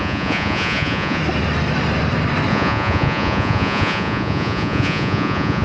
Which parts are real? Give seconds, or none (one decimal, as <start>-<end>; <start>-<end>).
1.2-2.5